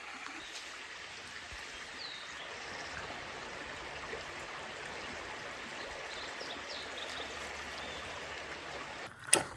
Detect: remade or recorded recorded